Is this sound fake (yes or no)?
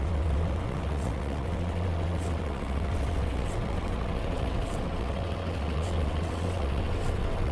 yes